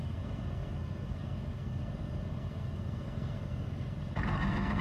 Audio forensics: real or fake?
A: fake